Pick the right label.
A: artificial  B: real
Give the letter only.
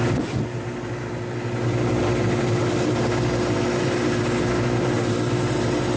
B